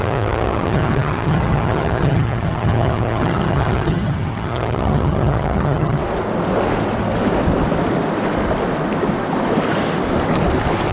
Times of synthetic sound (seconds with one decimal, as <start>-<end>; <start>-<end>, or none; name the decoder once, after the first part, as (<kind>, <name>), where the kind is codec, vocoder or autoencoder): 0.0-6.0 (vocoder, HiFi-GAN)